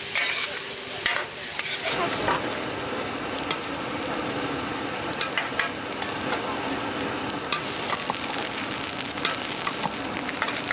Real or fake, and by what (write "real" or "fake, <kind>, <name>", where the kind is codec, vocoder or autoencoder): real